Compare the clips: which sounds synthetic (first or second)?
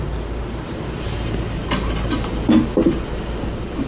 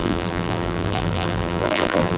second